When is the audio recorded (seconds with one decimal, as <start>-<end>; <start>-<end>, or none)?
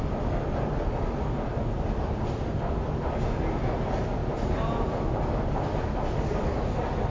0.0-7.1